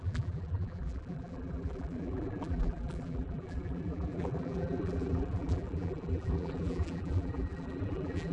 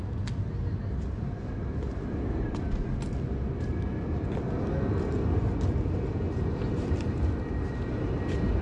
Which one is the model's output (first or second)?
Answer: first